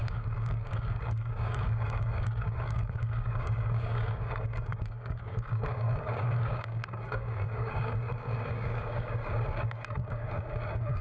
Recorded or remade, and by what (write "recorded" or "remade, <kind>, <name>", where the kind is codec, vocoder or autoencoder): remade, codec, DAC